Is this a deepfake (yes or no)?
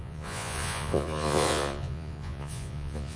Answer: yes